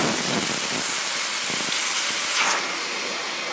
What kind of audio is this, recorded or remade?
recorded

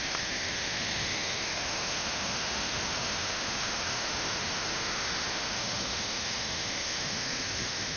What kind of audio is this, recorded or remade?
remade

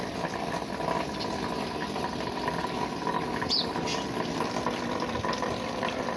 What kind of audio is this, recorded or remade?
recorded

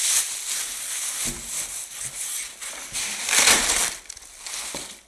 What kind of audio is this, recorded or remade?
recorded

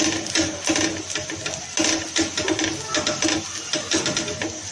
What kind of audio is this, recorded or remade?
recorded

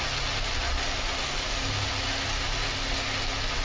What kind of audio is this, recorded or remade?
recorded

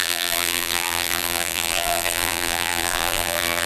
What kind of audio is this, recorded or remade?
remade